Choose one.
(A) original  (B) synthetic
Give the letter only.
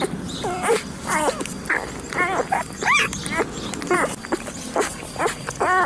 A